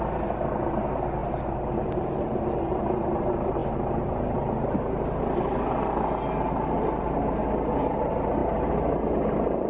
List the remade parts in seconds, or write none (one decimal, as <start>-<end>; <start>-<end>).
none